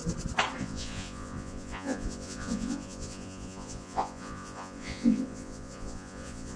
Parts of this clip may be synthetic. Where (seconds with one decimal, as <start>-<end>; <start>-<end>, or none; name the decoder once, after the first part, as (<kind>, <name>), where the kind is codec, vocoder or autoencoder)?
0.6-6.6 (vocoder, Vocos)